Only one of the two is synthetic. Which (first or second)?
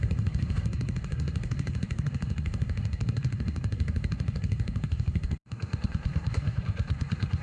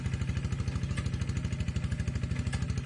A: first